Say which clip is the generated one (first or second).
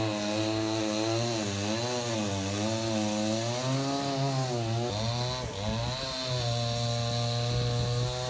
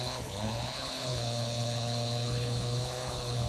second